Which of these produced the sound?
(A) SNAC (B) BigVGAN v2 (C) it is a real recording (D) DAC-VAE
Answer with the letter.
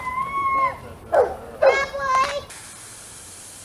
B